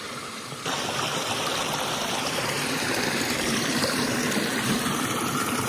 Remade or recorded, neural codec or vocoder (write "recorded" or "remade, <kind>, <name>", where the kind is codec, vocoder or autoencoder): remade, vocoder, BigVGAN v2